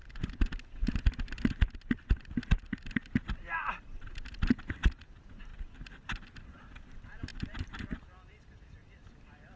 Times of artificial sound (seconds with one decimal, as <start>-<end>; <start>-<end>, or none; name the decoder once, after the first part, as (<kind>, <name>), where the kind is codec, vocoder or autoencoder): none